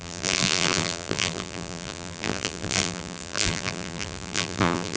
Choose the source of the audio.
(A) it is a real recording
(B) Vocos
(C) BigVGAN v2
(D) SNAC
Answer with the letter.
C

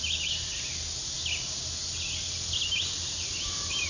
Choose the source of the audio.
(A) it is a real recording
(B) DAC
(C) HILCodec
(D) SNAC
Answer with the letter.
A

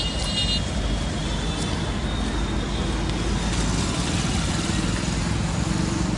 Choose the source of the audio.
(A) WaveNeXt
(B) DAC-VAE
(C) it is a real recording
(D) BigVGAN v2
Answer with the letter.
C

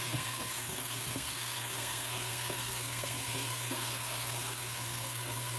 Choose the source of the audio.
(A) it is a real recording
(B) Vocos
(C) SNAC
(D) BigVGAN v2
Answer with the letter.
C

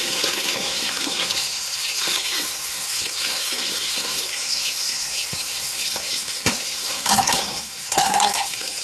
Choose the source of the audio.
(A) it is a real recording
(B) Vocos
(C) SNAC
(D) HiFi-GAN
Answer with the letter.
C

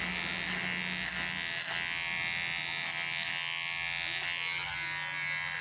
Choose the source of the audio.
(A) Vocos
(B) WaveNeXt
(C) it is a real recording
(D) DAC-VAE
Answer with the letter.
C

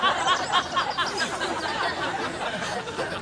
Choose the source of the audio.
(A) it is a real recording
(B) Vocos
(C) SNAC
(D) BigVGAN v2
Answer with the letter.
A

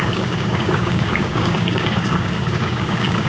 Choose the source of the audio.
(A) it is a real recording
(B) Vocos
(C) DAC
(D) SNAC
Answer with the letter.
C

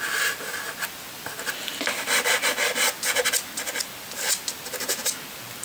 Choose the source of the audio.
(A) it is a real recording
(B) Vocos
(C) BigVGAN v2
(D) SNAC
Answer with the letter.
A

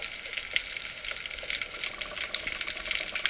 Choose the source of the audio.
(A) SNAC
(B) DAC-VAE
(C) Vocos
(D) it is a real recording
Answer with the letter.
D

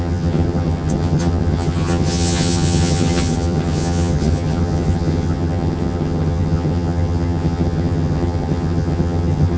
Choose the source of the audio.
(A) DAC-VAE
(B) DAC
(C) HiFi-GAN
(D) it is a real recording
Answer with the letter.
C